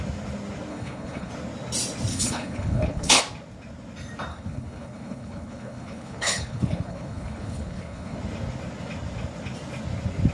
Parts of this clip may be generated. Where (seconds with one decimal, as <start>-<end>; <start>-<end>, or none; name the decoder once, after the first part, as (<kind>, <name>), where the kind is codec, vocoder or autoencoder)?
0.7-1.3 (codec, HILCodec); 2.1-3.2; 4.3-8.2